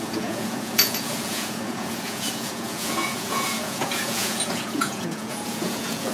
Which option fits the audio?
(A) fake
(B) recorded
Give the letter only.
A